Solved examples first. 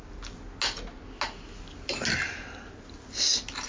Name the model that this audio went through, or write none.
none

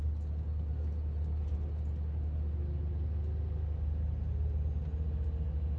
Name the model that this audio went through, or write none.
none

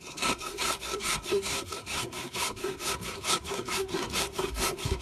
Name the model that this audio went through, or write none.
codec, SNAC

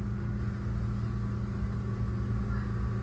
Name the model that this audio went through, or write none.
none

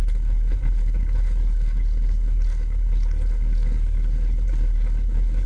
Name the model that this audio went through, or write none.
codec, HILCodec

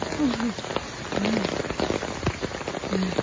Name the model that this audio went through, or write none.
none